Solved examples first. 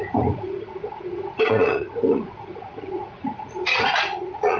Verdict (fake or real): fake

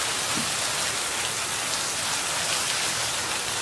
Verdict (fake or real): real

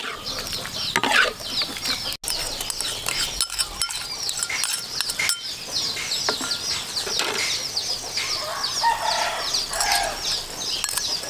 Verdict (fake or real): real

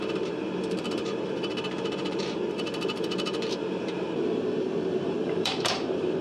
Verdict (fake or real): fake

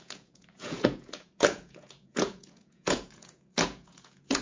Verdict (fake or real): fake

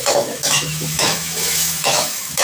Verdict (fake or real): fake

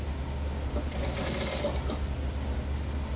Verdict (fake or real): real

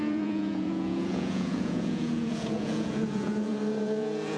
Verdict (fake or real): fake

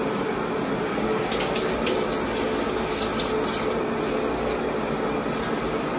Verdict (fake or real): real